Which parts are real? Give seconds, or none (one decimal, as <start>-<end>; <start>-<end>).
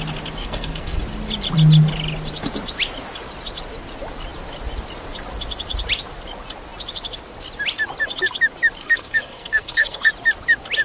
0.0-0.4; 1.0-8.8; 10.1-10.8